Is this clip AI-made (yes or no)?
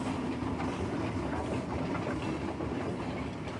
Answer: no